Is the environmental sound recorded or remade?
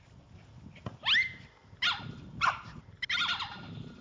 recorded